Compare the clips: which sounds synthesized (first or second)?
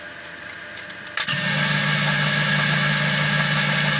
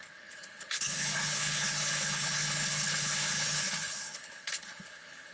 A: second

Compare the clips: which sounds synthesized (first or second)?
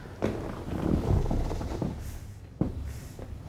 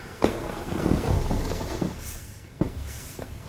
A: second